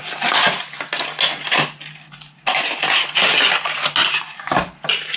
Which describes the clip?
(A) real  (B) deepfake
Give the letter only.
A